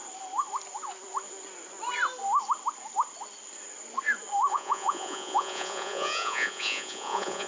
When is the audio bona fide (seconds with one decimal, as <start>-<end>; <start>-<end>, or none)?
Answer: 0.0-4.5